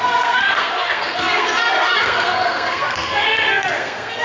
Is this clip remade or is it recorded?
remade